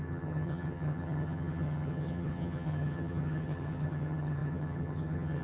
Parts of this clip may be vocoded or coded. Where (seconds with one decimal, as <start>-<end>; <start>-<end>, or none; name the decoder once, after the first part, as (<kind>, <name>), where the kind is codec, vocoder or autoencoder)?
0.0-5.4 (vocoder, HiFi-GAN)